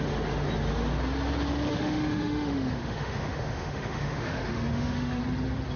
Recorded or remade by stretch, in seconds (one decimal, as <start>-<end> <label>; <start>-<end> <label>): 0.0-1.7 recorded; 1.7-5.2 remade; 5.2-5.8 recorded